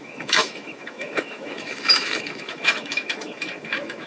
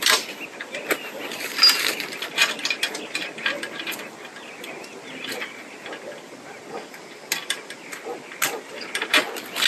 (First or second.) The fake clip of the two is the first